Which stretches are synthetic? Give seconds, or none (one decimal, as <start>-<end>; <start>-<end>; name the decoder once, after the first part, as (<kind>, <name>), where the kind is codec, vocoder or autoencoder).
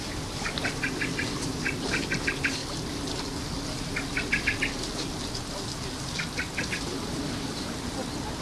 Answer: none